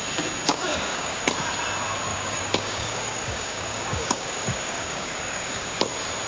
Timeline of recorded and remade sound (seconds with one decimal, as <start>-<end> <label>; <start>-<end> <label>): 0.0-0.5 recorded; 0.5-1.2 remade; 1.2-2.1 recorded; 2.1-5.8 remade; 5.8-6.3 recorded

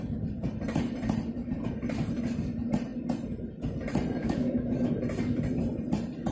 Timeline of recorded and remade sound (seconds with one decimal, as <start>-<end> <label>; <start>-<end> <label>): 0.0-4.2 recorded; 4.2-4.9 remade; 4.9-6.3 recorded

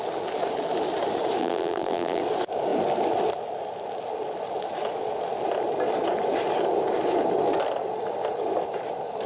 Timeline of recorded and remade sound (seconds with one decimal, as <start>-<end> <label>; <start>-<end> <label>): 0.0-1.4 recorded; 1.4-2.2 remade; 2.2-9.3 recorded